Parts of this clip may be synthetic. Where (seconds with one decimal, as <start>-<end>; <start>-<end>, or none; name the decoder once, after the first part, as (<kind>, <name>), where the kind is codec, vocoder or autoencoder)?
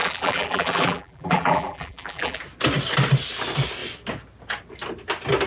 0.0-2.4 (vocoder, BigVGAN v2)